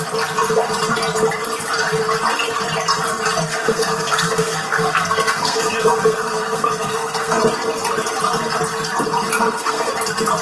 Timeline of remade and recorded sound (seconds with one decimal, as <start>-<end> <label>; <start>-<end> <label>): 0.0-3.5 recorded; 3.5-7.4 remade; 7.4-9.4 recorded; 9.4-9.9 remade; 9.9-10.4 recorded